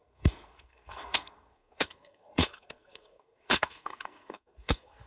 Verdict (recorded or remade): remade